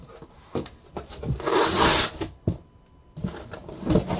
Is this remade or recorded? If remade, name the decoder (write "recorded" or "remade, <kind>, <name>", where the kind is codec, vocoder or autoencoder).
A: recorded